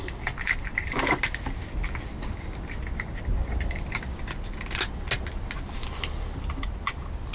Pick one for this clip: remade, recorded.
recorded